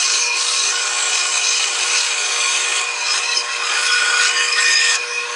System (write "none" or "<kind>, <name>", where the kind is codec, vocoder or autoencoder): codec, DAC